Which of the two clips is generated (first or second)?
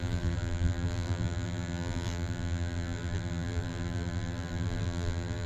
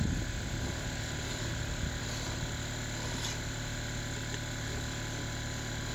first